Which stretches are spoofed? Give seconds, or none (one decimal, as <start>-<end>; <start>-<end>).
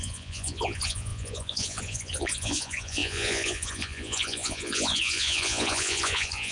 0.0-6.5